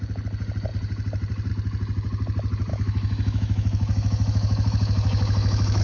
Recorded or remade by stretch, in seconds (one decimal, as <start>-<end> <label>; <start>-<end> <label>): 0.0-2.7 recorded; 2.7-5.8 remade